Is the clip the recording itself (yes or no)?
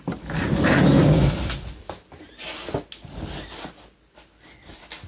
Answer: yes